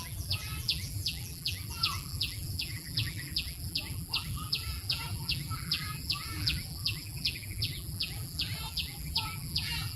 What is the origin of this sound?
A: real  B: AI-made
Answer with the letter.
B